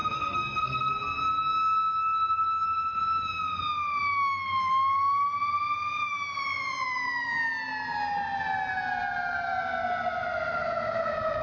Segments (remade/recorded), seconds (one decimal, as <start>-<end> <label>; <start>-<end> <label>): 0.0-0.9 remade; 0.9-11.4 recorded